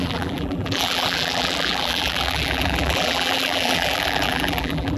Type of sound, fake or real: fake